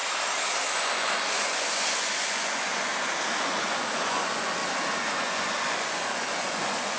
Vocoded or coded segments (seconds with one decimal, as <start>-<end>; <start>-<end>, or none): 0.7-2.9; 3.4-4.6; 5.1-7.0